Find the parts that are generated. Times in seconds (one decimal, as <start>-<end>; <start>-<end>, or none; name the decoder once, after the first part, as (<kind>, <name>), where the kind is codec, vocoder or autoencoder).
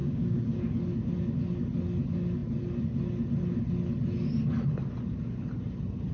0.0-0.6 (codec, DAC)